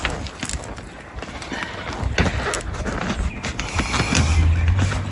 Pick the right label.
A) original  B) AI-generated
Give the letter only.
A